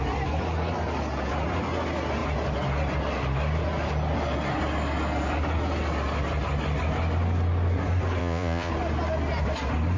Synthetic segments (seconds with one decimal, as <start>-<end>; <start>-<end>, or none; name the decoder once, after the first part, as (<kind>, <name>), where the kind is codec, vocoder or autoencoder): 8.2-8.7 (vocoder, Vocos)